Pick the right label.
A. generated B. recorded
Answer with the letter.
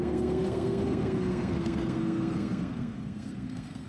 A